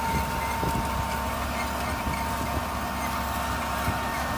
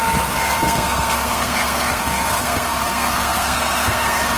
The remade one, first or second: second